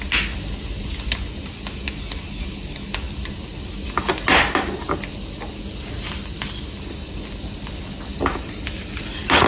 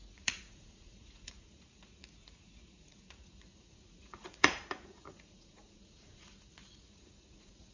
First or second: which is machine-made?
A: second